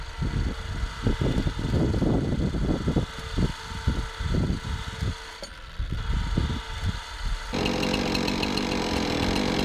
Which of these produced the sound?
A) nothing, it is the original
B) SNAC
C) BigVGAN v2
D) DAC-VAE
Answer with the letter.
A